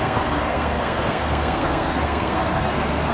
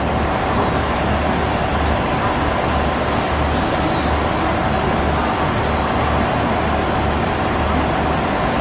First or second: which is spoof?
first